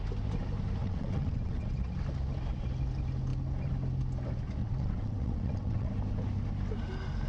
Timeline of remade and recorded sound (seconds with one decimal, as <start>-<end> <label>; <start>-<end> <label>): 0.0-0.8 recorded; 0.8-1.8 remade; 1.8-4.6 recorded; 4.6-5.9 remade; 5.9-7.3 recorded